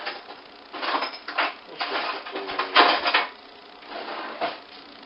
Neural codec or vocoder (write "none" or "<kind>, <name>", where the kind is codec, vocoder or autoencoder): none